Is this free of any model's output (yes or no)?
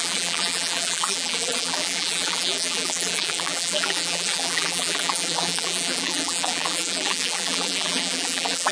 no